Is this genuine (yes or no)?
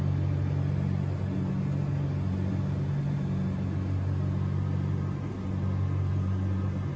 yes